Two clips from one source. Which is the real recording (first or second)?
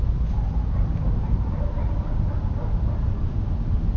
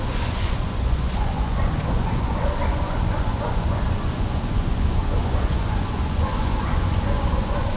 first